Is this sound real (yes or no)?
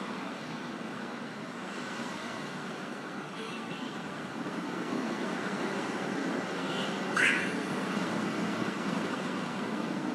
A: no